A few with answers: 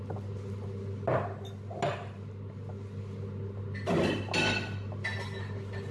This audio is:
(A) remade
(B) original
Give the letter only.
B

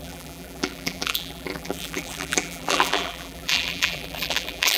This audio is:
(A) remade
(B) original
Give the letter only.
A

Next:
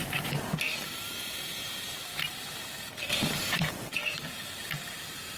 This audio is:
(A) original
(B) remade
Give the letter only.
B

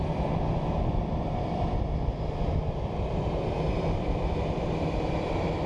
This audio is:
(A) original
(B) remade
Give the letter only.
B